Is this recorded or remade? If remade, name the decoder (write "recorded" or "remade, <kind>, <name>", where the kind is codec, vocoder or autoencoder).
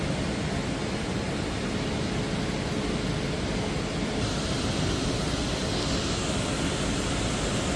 recorded